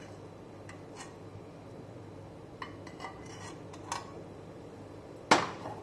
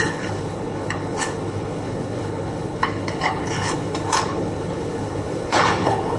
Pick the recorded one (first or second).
first